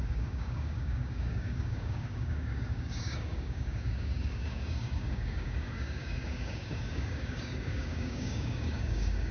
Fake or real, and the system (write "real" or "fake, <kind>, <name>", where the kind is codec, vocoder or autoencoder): fake, codec, DAC